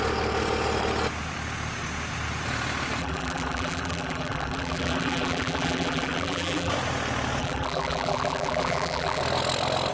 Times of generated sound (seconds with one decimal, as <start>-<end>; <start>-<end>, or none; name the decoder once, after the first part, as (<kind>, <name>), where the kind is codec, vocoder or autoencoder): 3.0-6.7 (vocoder, BigVGAN v2); 7.4-9.2